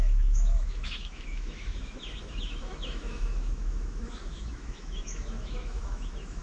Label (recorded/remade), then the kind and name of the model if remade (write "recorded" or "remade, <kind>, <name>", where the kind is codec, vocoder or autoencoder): remade, autoencoder, DAC-VAE